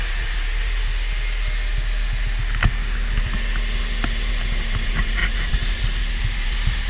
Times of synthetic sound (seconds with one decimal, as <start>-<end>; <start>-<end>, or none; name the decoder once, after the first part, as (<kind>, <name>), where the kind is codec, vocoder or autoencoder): 0.0-0.9 (vocoder, BigVGAN v2); 4.3-6.9